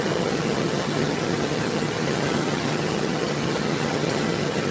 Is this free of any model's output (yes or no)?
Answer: no